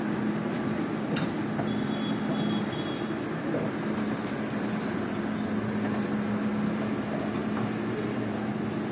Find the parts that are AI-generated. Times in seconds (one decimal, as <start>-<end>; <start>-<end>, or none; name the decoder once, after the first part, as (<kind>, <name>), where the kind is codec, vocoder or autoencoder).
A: none